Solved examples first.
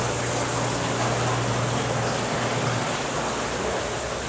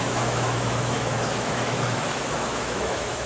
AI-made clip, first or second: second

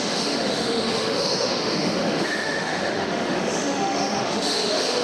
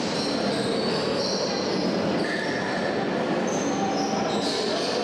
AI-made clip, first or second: first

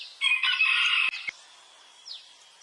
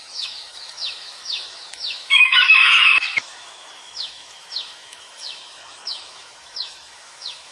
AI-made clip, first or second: second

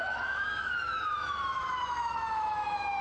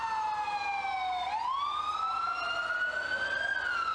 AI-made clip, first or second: first